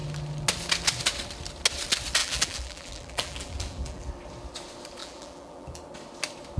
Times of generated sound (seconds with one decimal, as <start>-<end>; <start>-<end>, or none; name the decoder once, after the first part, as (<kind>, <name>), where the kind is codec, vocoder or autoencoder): 2.2-4.1 (vocoder, BigVGAN v2); 5.0-5.8